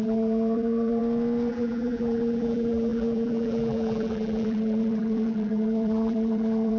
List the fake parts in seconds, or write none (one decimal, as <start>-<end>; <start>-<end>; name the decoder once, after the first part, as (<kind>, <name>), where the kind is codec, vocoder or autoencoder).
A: 0.0-1.0 (vocoder, BigVGAN v2); 1.5-6.8